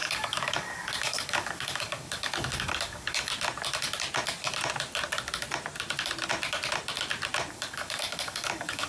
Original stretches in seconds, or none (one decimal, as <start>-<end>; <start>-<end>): 3.3-7.5